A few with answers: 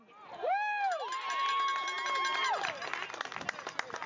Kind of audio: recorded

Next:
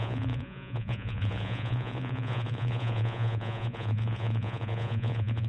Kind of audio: remade